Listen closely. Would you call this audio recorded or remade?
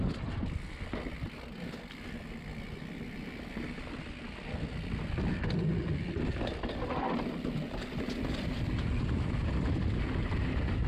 recorded